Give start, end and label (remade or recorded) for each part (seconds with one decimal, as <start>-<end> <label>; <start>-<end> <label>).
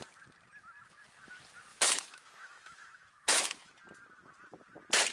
0.0-1.7 recorded; 1.7-3.7 remade; 3.7-5.1 recorded